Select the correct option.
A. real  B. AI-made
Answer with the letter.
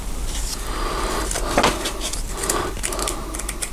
A